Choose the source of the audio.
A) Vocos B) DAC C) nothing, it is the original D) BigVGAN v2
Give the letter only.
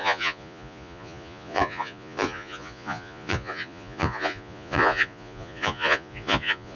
A